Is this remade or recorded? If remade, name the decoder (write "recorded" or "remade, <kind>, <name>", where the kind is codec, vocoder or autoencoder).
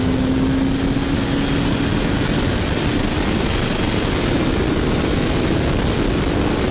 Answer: recorded